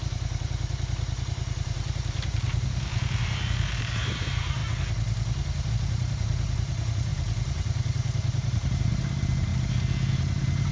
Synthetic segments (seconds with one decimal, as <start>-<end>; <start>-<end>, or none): 0.0-4.6; 5.7-9.5